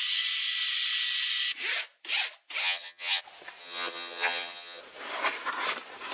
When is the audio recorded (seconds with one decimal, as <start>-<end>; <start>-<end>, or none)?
0.0-2.6; 3.2-3.6; 4.8-6.1